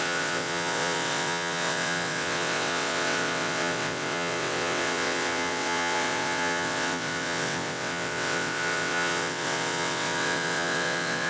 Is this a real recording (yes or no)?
no